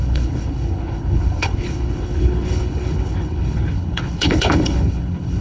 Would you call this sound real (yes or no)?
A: no